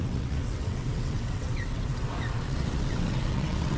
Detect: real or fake fake